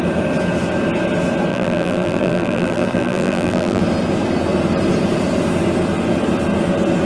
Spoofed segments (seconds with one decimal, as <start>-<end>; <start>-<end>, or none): 1.5-3.8